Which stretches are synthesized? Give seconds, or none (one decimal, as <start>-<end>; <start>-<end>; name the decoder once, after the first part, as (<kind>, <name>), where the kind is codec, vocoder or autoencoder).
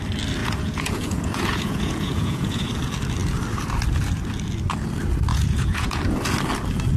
0.4-2.7 (vocoder, Vocos); 5.3-6.0